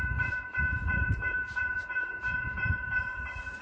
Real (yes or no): no